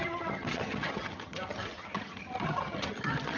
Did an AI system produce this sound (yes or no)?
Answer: yes